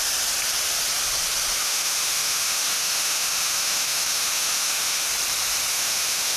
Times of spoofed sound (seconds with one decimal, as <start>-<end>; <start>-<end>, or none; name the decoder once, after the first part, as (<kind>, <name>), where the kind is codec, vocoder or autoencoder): 1.6-5.1 (autoencoder, DAC-VAE); 5.7-6.4